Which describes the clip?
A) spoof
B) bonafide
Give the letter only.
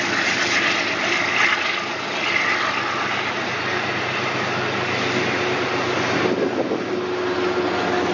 B